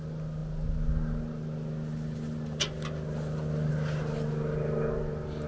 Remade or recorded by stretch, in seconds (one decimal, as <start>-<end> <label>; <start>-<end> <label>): 0.0-5.5 recorded